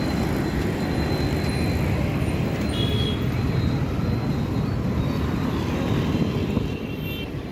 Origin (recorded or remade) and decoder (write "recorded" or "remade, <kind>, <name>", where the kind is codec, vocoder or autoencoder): recorded